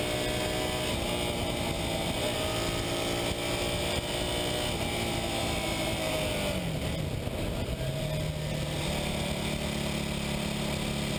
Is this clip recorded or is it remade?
recorded